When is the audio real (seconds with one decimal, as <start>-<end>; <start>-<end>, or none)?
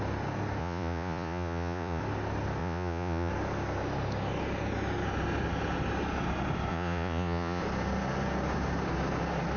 0.0-0.6; 2.0-2.6; 3.3-6.7; 7.6-9.6